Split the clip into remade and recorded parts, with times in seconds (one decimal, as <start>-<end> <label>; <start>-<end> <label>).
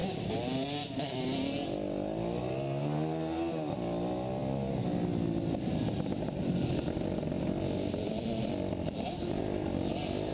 0.0-10.3 recorded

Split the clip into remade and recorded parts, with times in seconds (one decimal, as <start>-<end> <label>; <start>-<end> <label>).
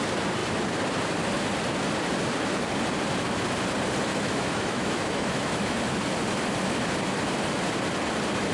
0.0-4.1 recorded; 4.1-5.8 remade; 5.8-8.5 recorded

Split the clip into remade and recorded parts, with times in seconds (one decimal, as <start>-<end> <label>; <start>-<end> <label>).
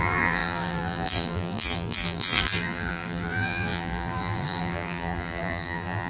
0.0-6.1 remade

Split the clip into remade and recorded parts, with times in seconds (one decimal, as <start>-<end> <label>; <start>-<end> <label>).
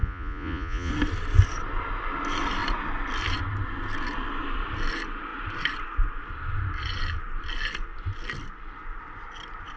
0.0-0.9 remade; 0.9-9.8 recorded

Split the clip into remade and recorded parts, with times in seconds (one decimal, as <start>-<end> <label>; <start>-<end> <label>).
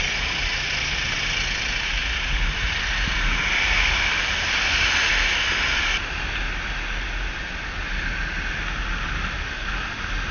0.0-10.3 recorded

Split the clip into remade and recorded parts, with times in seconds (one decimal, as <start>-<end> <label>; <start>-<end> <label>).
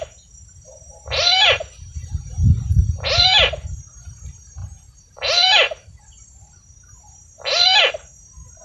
0.0-3.8 remade; 3.8-4.6 recorded; 4.6-6.0 remade; 6.0-8.6 recorded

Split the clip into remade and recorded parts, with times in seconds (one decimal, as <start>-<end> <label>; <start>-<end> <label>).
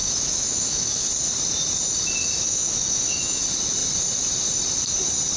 0.0-1.1 remade; 1.1-2.2 recorded; 2.2-3.4 remade; 3.4-5.4 recorded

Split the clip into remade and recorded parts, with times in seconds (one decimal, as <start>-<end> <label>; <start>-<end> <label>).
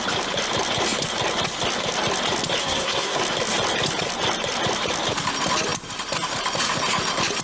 0.0-2.6 recorded; 2.6-3.2 remade; 3.2-7.4 recorded